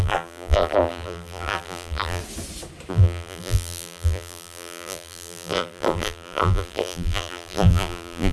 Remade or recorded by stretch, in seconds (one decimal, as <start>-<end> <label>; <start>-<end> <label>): 0.0-2.2 remade; 2.2-2.9 recorded; 2.9-8.3 remade